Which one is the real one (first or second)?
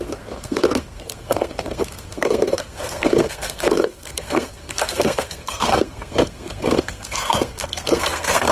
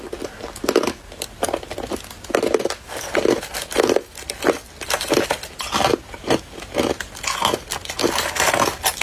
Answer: second